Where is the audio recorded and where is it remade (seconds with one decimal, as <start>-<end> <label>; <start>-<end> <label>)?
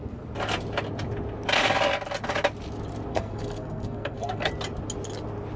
0.0-3.1 recorded; 3.1-4.5 remade; 4.5-5.6 recorded